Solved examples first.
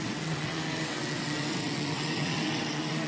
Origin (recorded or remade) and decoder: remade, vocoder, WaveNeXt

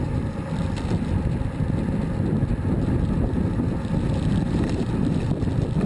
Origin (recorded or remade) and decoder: recorded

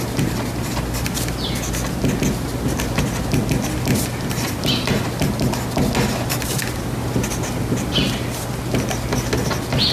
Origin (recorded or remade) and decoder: recorded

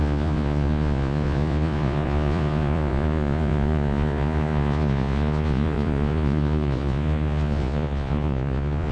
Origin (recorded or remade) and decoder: remade, vocoder, Vocos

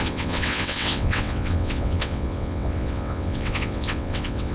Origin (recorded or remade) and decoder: remade, vocoder, WaveNeXt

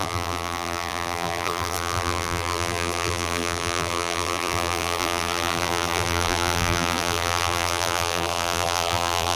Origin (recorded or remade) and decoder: remade, vocoder, BigVGAN v2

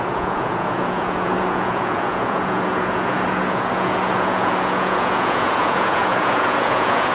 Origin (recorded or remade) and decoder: remade, vocoder, Vocos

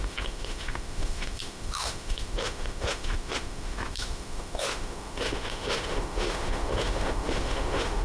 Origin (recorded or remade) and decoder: remade, autoencoder, DAC-VAE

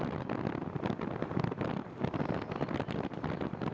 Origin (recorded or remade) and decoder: recorded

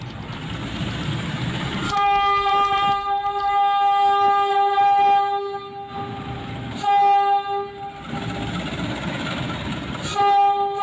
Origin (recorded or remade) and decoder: recorded